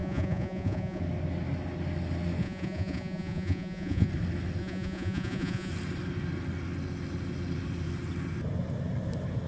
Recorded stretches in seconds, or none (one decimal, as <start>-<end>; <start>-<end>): 1.0-2.4; 4.1-4.6; 5.7-9.5